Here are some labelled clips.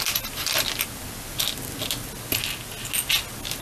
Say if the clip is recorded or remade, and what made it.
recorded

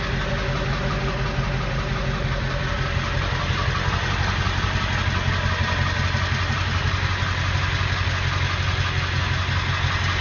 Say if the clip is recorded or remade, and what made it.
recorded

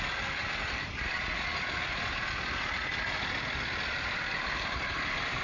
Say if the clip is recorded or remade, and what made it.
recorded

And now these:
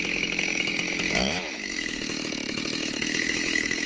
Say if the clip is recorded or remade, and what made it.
remade, autoencoder, DAC-VAE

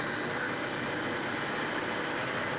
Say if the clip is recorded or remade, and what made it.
recorded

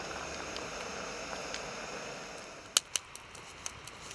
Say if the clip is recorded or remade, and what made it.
recorded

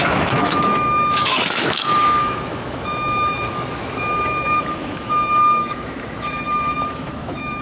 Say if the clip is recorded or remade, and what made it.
remade, autoencoder, DAC-VAE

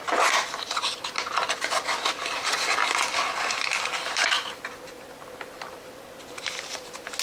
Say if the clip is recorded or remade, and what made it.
recorded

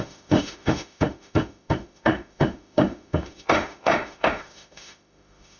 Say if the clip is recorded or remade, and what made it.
remade, autoencoder, DAC-VAE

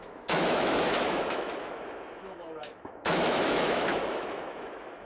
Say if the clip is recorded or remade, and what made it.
remade, autoencoder, DAC-VAE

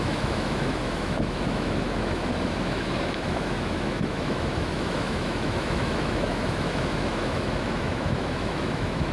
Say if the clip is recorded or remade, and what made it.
remade, autoencoder, DAC-VAE